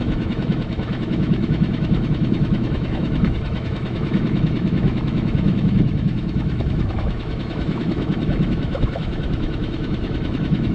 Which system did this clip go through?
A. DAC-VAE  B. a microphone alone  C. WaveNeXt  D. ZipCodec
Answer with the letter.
A